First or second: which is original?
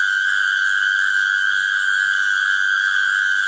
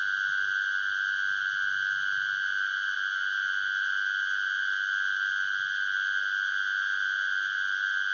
second